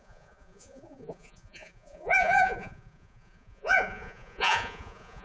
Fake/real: fake